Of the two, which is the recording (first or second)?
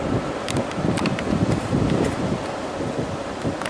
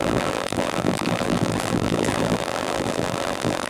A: first